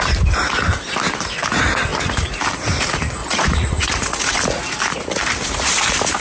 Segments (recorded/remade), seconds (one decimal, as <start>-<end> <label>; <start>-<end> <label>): 0.0-1.9 recorded; 1.9-2.4 remade; 2.4-3.2 recorded; 3.2-4.4 remade; 4.4-6.2 recorded